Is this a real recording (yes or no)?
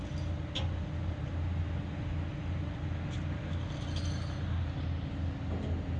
yes